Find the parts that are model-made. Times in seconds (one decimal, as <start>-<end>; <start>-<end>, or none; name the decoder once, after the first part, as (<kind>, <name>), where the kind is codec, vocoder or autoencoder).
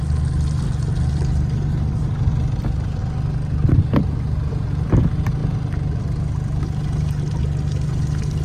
none